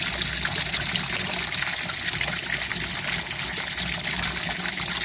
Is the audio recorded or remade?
recorded